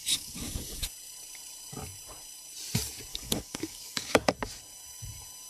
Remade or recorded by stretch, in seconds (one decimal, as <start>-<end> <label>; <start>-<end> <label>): 0.0-0.8 remade; 0.8-3.1 recorded; 3.1-4.3 remade; 4.3-5.5 recorded